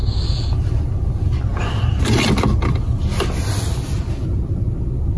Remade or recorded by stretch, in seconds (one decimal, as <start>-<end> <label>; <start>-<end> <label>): 0.0-5.2 recorded